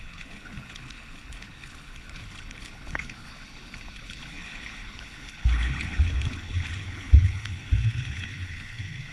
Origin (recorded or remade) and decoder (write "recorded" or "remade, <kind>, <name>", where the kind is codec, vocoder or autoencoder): remade, codec, HILCodec